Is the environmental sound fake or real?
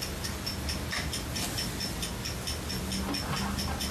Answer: real